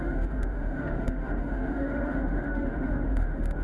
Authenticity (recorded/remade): remade